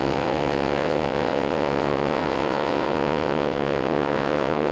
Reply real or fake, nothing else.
fake